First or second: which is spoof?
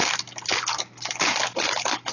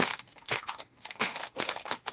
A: second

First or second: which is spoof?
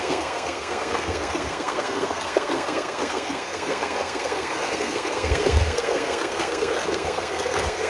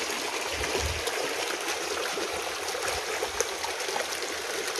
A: first